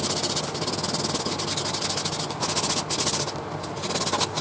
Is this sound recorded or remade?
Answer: recorded